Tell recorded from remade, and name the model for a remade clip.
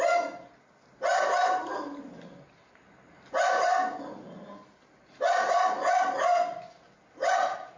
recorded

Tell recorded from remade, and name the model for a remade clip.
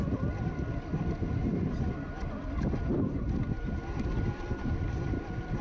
recorded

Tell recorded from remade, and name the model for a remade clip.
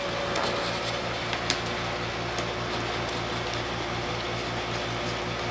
recorded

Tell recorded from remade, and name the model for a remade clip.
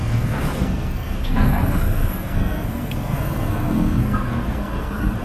remade, codec, SNAC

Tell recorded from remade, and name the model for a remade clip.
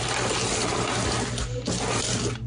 recorded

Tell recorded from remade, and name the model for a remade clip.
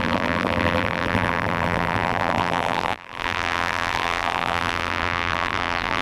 remade, vocoder, BigVGAN v2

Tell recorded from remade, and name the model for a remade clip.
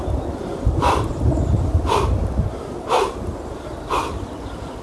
remade, vocoder, BigVGAN v2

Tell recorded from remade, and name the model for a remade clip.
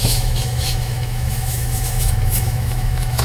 remade, autoencoder, DAC-VAE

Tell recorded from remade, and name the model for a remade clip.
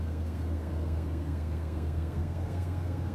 remade, codec, SNAC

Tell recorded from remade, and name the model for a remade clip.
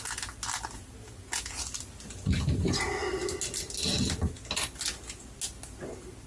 recorded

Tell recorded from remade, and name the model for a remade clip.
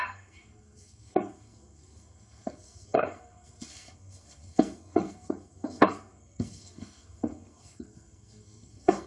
remade, codec, SNAC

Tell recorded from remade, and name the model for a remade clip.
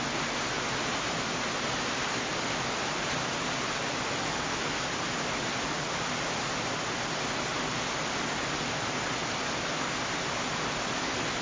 recorded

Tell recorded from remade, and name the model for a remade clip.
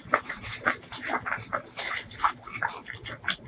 recorded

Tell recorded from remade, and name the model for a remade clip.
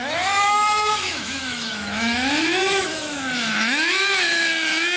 remade, autoencoder, DAC-VAE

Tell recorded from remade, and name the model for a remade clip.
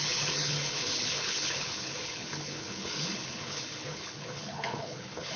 remade, codec, HILCodec